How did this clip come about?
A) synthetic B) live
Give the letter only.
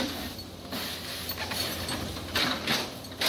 B